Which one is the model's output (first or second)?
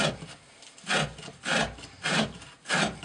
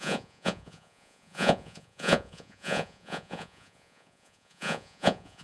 second